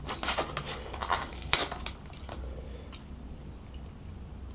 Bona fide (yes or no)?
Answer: yes